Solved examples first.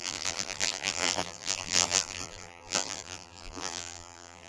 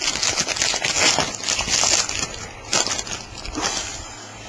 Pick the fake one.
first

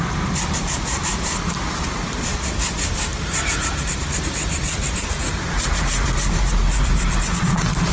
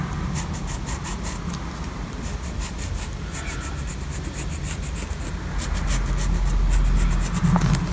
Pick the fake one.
first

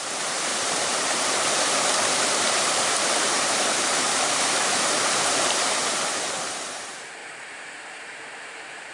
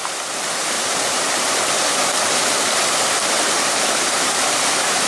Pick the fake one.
first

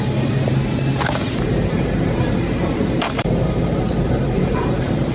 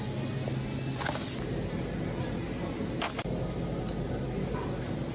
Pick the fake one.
first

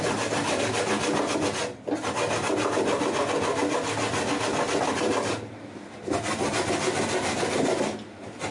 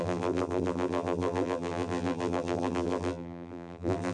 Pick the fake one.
second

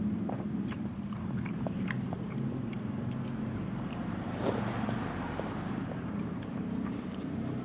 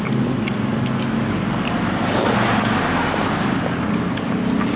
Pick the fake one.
first